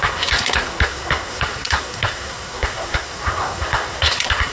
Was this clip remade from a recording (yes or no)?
yes